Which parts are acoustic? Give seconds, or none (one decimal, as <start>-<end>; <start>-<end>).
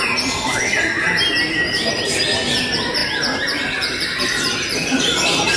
0.0-5.6